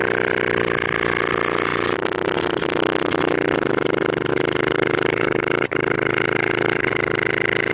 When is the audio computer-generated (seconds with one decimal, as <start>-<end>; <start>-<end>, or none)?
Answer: 4.3-6.9